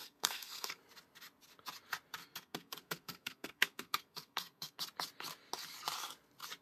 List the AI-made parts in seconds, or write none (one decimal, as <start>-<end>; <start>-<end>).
0.0-0.8; 2.2-4.8